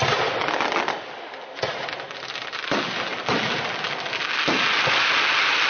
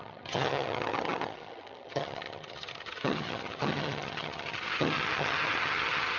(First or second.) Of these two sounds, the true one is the first